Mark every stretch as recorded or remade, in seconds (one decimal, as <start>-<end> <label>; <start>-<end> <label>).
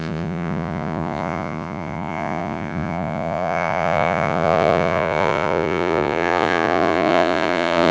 0.0-7.9 remade